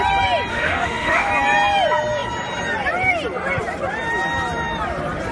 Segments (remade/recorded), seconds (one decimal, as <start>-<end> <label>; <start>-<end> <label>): 0.0-0.5 recorded; 0.5-1.3 remade; 1.3-5.3 recorded